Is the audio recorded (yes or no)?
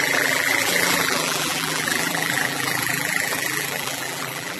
no